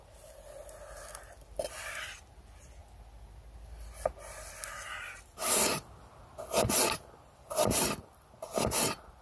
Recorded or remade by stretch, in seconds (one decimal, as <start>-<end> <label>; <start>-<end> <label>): 0.0-9.2 recorded